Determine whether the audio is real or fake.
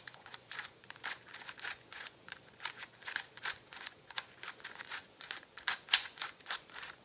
fake